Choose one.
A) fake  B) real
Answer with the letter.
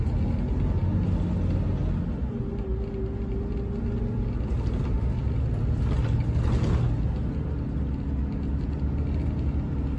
B